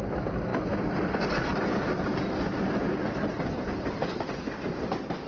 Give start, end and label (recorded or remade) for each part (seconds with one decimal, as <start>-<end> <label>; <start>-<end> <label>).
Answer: 0.0-5.3 recorded